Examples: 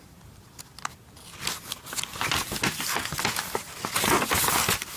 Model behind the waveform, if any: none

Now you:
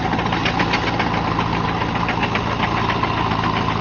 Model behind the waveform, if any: none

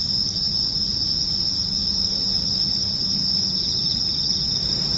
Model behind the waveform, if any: none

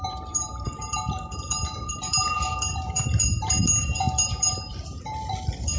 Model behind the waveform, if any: vocoder, BigVGAN v2